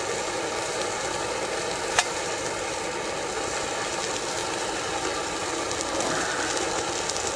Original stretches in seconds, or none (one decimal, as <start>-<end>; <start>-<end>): 0.0-7.4